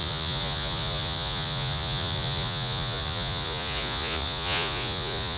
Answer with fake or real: fake